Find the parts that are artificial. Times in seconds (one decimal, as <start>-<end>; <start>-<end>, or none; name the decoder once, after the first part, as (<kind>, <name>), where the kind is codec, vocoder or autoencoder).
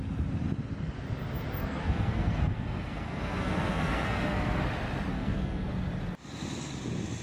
1.6-4.6 (codec, SNAC); 5.1-5.7